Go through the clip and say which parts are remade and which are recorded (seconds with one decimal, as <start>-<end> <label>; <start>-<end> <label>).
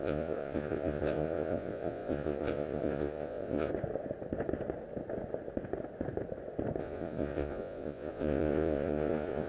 0.0-3.7 remade; 3.7-6.8 recorded; 6.8-9.5 remade